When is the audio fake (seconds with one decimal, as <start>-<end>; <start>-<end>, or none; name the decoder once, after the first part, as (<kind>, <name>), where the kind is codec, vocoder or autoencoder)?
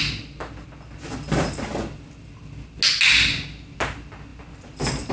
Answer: none